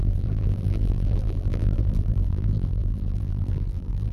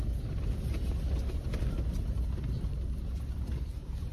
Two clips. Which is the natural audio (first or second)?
second